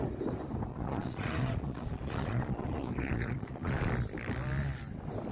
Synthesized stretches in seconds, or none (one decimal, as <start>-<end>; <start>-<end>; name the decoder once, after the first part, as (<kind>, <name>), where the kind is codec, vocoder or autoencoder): 0.7-3.9 (vocoder, Vocos)